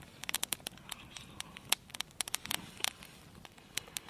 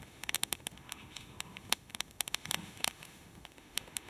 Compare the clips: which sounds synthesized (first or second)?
second